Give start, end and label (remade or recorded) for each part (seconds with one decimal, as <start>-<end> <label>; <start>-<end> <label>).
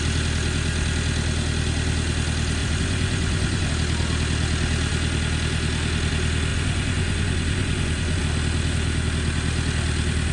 0.0-2.6 recorded; 2.6-3.7 remade; 3.7-6.5 recorded; 6.5-8.2 remade; 8.2-10.3 recorded